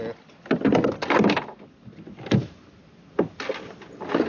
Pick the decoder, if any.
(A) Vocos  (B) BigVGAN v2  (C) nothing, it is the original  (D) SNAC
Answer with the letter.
C